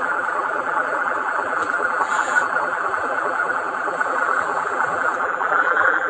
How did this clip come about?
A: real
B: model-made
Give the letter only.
B